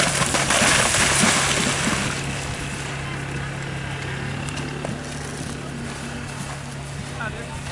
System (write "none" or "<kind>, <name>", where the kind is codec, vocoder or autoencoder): none